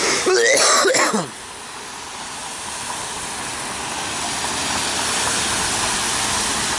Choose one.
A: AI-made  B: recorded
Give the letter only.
B